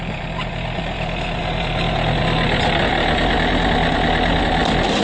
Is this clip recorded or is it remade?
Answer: recorded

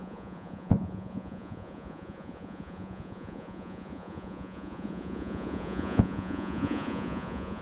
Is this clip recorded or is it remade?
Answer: remade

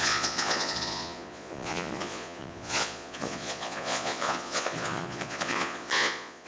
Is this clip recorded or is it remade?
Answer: remade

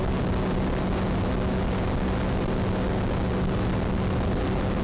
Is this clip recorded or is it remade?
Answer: recorded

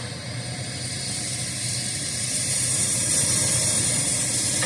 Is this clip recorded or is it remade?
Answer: remade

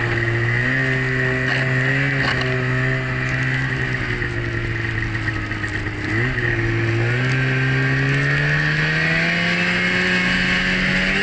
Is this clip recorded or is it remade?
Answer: recorded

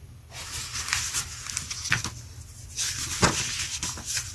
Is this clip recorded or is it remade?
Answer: recorded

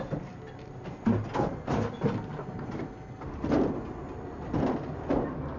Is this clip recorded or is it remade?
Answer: recorded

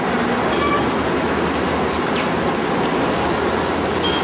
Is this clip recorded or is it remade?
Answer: recorded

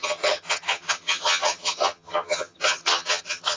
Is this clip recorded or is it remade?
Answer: remade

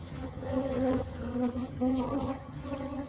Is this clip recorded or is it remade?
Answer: remade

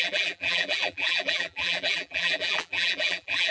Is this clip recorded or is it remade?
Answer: remade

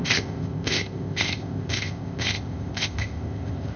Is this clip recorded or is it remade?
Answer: remade